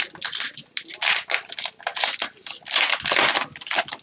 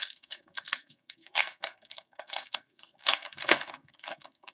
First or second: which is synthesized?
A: second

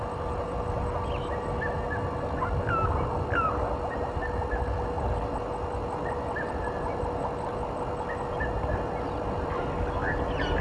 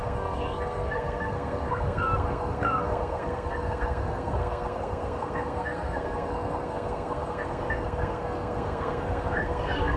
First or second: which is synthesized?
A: second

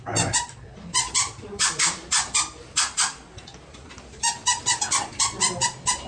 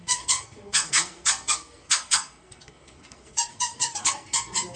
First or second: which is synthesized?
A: second